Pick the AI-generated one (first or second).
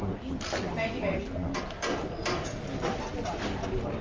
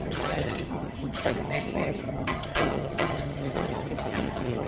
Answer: second